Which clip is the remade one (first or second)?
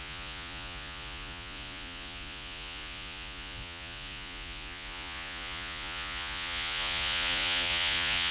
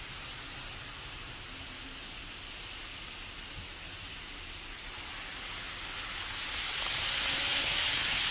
first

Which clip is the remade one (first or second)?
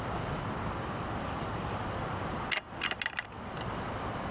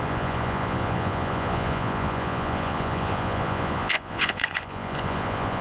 second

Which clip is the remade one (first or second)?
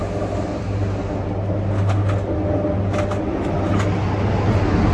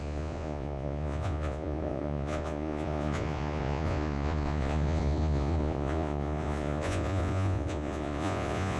second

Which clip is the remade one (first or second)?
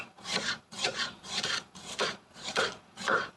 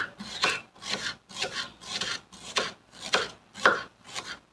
first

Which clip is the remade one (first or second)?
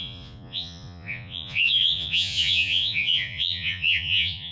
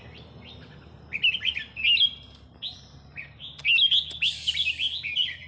first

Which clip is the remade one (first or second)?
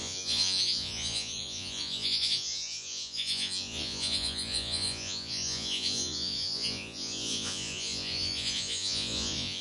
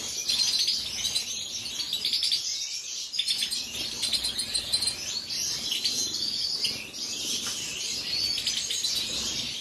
first